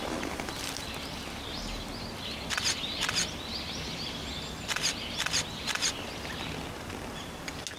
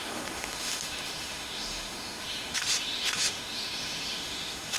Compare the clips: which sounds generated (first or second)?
second